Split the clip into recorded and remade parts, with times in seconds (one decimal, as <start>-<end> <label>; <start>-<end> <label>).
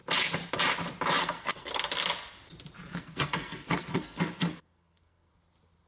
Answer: 0.0-1.2 recorded; 1.2-1.7 remade; 1.7-2.9 recorded; 2.9-5.3 remade; 5.3-5.9 recorded